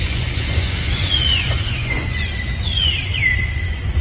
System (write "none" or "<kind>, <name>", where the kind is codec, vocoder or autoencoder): vocoder, Vocos